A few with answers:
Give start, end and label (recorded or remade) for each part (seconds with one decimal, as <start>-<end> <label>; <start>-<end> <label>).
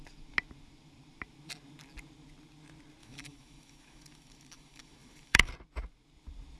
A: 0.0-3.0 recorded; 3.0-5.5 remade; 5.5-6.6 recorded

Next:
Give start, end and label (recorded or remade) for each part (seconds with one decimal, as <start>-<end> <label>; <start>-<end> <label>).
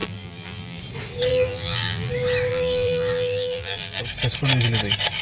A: 0.0-0.8 remade; 0.8-1.3 recorded; 1.3-2.1 remade; 2.1-2.5 recorded; 2.5-4.0 remade; 4.0-5.2 recorded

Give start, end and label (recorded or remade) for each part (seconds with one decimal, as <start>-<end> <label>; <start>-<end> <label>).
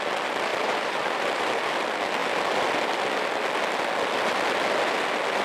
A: 0.0-0.5 recorded; 0.5-1.6 remade; 1.6-5.4 recorded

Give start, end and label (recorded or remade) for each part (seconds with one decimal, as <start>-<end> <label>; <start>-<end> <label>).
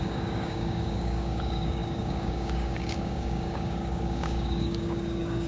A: 0.0-5.5 remade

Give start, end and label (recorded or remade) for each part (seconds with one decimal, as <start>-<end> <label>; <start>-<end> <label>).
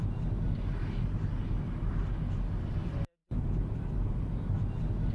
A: 0.0-5.1 recorded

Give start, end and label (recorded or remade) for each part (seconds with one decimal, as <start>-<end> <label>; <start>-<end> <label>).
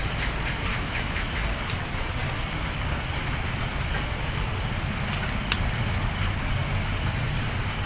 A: 0.0-0.7 recorded; 0.7-1.3 remade; 1.3-7.9 recorded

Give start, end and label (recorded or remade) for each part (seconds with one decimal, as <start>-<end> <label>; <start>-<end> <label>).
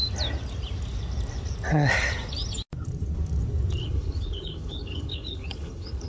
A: 0.0-3.8 recorded; 3.8-6.1 remade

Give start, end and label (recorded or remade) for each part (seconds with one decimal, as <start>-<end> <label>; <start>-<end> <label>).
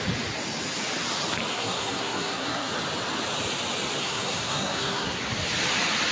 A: 0.0-1.5 recorded; 1.5-2.7 remade; 2.7-4.0 recorded; 4.0-5.2 remade; 5.2-6.1 recorded